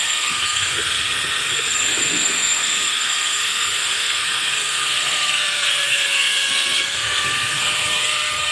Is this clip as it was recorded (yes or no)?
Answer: no